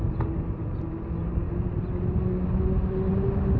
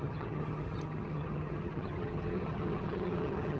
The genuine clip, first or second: first